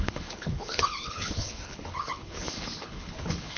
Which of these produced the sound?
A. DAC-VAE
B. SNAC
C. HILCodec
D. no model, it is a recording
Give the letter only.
C